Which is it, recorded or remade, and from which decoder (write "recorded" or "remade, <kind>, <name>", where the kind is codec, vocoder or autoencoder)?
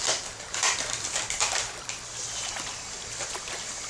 recorded